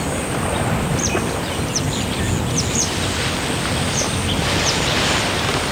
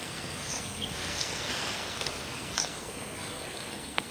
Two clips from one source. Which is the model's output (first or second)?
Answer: second